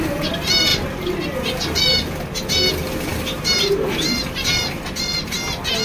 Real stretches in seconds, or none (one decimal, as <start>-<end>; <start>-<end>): 0.0-5.8